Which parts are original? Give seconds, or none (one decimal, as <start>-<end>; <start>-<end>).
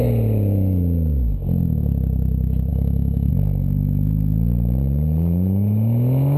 0.0-2.7; 3.3-6.4